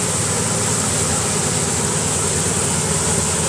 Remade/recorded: recorded